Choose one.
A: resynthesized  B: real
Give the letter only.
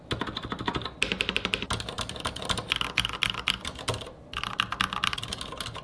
B